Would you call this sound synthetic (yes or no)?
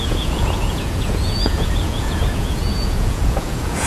yes